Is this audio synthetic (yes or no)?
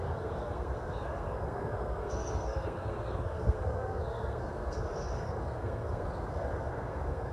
yes